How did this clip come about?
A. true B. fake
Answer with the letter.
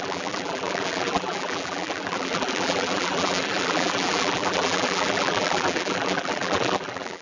B